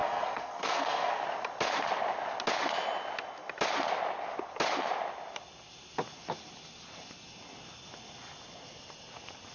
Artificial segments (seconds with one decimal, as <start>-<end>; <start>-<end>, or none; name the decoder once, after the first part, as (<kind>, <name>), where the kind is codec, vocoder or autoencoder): 0.0-1.2 (codec, SNAC)